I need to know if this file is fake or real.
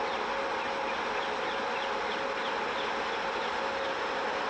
real